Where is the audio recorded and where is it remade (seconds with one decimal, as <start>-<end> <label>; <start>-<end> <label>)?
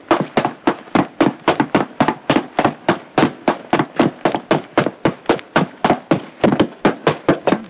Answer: 0.0-7.7 recorded